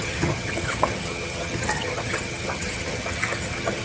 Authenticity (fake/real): fake